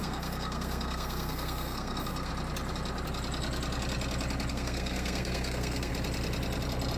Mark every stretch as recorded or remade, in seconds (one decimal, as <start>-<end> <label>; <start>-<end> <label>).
0.0-2.3 remade; 2.3-4.5 recorded; 4.5-5.9 remade; 5.9-7.0 recorded